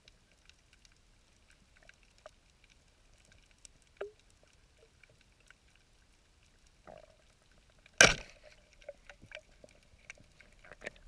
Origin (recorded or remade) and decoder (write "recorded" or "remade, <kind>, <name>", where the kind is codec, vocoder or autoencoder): recorded